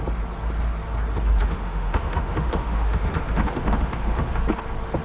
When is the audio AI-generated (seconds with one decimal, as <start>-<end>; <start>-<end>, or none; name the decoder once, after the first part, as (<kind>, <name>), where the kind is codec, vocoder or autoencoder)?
1.4-4.4 (autoencoder, DAC-VAE)